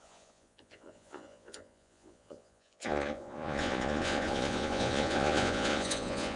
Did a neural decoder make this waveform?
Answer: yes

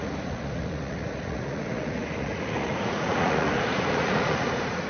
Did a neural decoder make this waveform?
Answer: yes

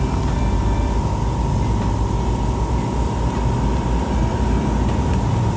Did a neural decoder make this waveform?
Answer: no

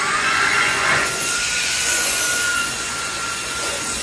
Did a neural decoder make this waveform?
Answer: yes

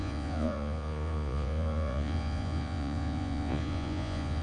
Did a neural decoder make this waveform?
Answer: yes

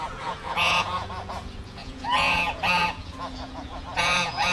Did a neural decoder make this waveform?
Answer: yes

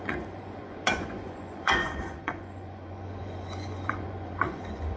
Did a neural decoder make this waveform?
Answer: yes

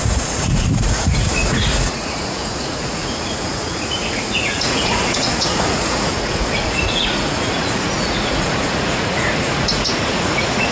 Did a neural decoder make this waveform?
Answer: yes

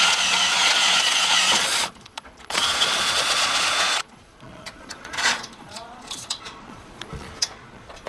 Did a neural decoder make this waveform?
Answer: yes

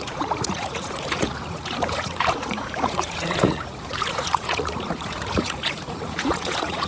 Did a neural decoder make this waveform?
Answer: yes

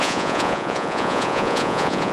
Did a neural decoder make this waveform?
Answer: yes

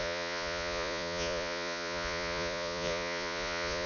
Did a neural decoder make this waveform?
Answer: yes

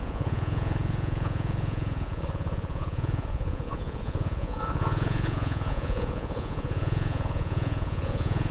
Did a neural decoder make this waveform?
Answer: yes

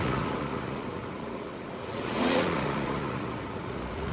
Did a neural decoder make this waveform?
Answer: yes